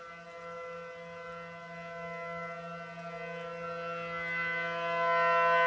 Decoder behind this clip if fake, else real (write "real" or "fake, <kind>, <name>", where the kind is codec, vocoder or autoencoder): real